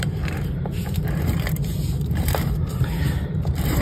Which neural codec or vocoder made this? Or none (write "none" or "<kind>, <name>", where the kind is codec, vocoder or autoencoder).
vocoder, BigVGAN v2